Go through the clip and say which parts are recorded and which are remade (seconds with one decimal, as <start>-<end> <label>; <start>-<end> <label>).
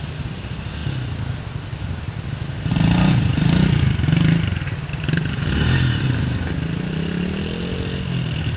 0.0-8.6 recorded